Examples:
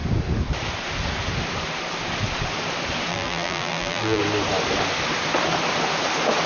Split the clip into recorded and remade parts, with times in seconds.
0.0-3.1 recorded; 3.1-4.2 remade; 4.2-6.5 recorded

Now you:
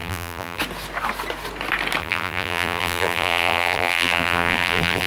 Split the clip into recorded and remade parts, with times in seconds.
0.0-0.6 remade; 0.6-2.0 recorded; 2.0-5.1 remade

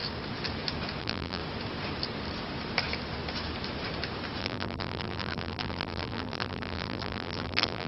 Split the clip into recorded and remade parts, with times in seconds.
0.0-1.0 recorded; 1.0-1.4 remade; 1.4-4.4 recorded; 4.4-7.9 remade